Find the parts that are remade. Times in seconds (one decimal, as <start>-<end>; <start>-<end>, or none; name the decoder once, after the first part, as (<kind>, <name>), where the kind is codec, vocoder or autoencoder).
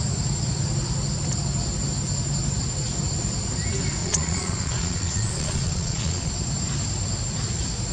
4.0-6.3 (vocoder, Vocos)